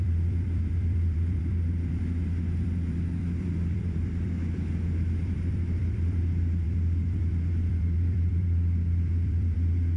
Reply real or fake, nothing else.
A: fake